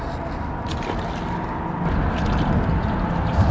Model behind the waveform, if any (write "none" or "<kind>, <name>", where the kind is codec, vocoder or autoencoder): none